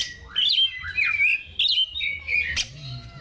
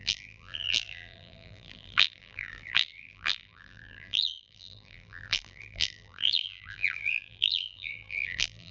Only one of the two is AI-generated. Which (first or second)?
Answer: second